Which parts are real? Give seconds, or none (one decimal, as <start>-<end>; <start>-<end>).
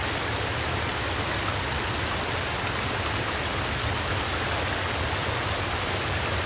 0.0-6.5